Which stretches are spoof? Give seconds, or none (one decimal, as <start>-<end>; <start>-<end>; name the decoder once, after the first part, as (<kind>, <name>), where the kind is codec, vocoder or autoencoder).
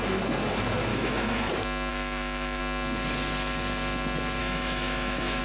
0.9-1.5 (autoencoder, DAC-VAE); 1.9-2.6; 4.4-5.4